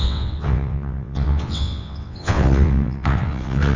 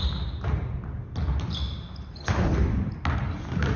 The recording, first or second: second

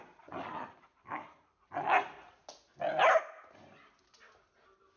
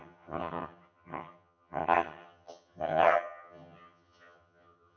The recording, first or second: first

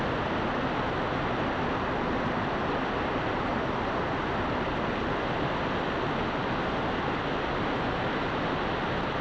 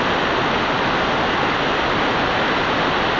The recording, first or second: first